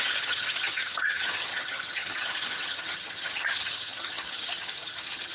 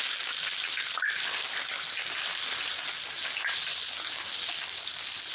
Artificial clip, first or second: first